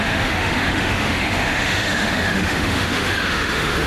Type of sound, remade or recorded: remade